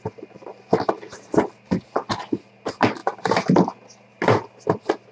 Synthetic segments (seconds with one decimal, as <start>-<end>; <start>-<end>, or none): none